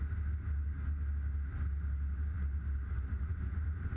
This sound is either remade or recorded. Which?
recorded